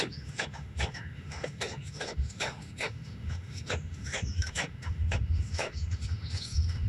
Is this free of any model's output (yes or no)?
no